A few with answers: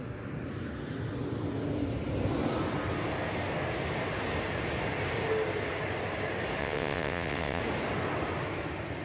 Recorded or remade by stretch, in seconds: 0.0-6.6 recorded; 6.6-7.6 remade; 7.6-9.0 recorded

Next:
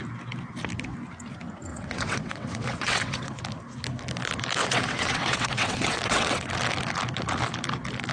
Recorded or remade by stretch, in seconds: 0.0-1.7 recorded; 1.7-3.4 remade; 3.4-4.6 recorded; 4.6-6.5 remade; 6.5-8.1 recorded

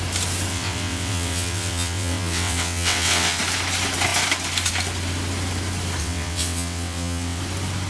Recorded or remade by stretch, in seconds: 0.0-0.5 recorded; 0.5-3.4 remade; 3.4-6.0 recorded; 6.0-7.4 remade; 7.4-7.9 recorded

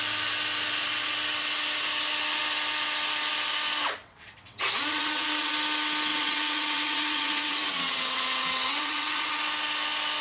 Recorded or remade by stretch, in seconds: 0.0-4.0 recorded; 4.0-5.5 remade; 5.5-6.1 recorded; 6.1-9.4 remade; 9.4-10.2 recorded

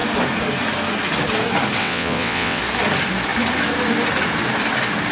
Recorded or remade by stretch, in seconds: 0.0-1.8 recorded; 1.8-2.6 remade; 2.6-5.1 recorded